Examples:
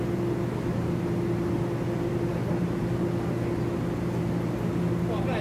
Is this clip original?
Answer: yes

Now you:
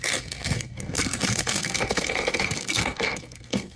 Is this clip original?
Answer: no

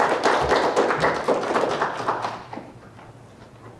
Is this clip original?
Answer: yes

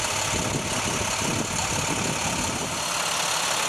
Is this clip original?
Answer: yes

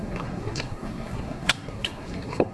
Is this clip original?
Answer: no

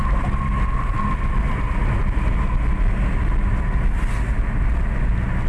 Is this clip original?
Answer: yes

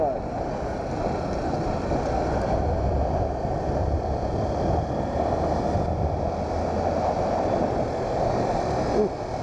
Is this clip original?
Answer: yes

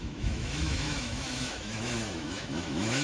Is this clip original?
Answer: no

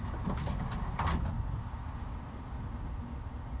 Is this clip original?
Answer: yes